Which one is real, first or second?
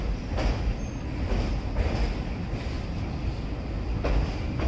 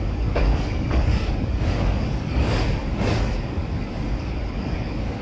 first